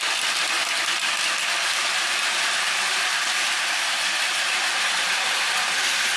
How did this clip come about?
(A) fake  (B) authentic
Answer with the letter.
A